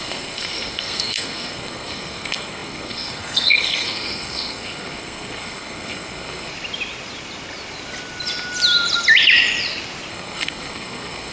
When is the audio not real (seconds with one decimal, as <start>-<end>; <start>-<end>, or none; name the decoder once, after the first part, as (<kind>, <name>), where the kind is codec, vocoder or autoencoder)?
0.0-6.5 (codec, SNAC); 10.1-11.3